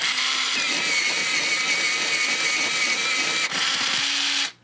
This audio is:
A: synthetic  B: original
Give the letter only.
B